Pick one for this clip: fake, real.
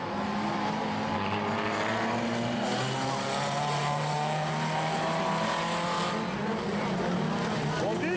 real